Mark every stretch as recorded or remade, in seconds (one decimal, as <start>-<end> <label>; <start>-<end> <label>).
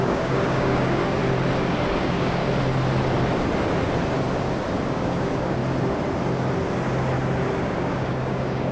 0.0-1.2 remade; 1.2-2.0 recorded; 2.0-2.4 remade; 2.4-4.9 recorded; 4.9-5.6 remade; 5.6-7.6 recorded; 7.6-8.7 remade